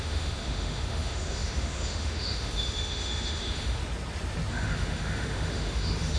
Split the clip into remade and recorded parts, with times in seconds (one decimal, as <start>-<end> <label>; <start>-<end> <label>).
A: 0.0-3.8 remade; 3.8-4.5 recorded; 4.5-6.2 remade

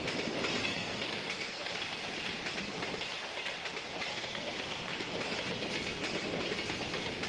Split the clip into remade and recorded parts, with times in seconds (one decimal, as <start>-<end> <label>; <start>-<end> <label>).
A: 0.0-0.6 recorded; 0.6-1.7 remade; 1.7-4.1 recorded; 4.1-5.1 remade; 5.1-7.3 recorded